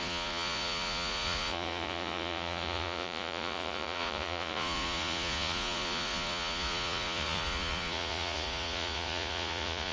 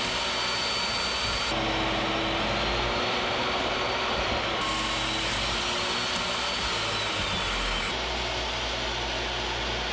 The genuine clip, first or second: second